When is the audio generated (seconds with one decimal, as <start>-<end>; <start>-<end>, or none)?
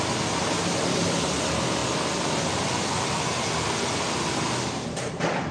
none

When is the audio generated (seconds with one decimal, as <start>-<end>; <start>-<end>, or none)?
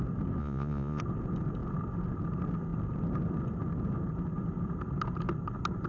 0.4-1.0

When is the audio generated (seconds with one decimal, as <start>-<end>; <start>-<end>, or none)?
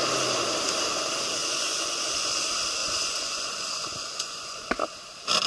1.4-2.4; 2.8-4.7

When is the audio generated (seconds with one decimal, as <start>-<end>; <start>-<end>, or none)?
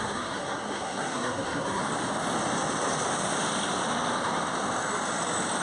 0.0-1.8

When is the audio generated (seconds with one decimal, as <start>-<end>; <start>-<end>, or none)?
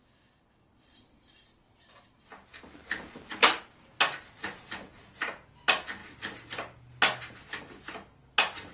none